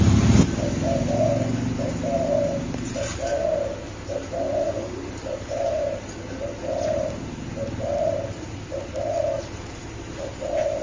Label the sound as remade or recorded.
recorded